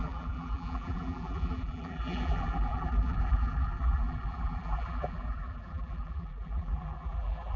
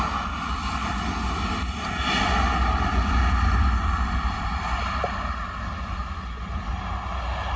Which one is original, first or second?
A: second